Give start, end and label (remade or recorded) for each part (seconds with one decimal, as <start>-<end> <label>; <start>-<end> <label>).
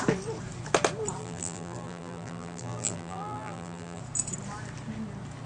0.0-1.2 recorded; 1.2-4.0 remade; 4.0-5.5 recorded